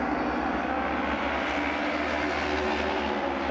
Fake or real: real